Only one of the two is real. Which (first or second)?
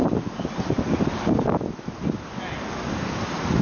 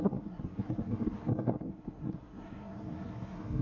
first